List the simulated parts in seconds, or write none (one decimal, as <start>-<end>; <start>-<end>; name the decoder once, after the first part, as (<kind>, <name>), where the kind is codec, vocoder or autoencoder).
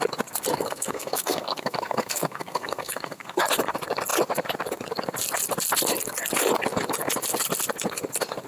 0.5-3.4 (codec, SNAC)